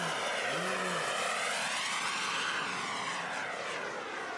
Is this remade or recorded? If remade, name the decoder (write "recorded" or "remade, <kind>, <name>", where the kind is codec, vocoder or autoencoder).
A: recorded